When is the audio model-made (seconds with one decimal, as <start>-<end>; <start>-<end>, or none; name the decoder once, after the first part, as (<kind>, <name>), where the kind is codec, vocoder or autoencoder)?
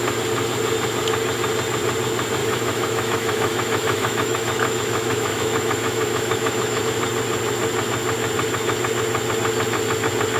2.4-6.8 (autoencoder, DAC-VAE)